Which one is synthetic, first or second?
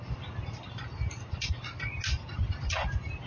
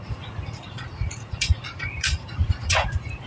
second